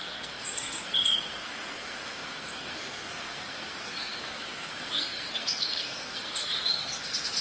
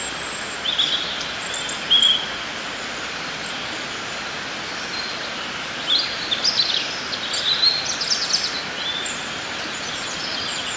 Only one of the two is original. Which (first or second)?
second